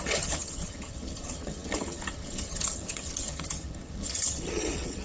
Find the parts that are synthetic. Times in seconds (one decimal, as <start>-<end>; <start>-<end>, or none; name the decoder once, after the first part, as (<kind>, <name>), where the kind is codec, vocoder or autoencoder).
0.0-5.0 (vocoder, HiFi-GAN)